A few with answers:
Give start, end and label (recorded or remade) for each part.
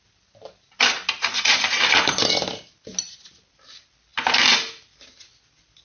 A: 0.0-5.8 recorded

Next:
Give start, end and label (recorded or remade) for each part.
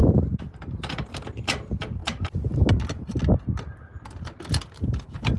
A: 0.0-5.4 recorded